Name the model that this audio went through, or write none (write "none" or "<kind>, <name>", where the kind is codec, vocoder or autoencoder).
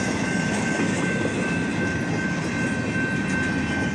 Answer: none